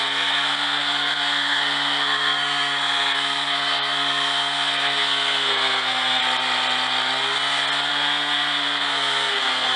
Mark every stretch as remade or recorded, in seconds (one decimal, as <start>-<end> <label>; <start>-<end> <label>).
0.0-6.2 remade; 6.2-7.9 recorded; 7.9-9.8 remade

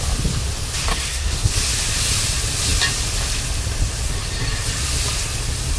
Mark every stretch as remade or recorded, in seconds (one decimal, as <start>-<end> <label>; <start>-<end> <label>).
0.0-0.9 recorded; 0.9-1.5 remade; 1.5-5.8 recorded